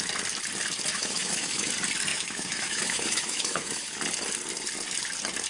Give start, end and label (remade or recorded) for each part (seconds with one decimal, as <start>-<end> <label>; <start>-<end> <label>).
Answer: 0.0-0.9 recorded; 0.9-1.7 remade; 1.7-2.1 recorded; 2.1-4.0 remade; 4.0-5.5 recorded